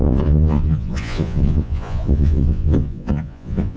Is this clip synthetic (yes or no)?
yes